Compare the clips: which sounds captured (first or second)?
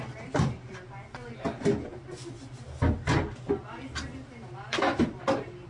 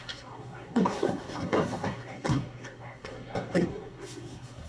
first